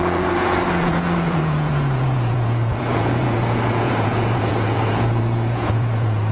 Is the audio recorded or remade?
remade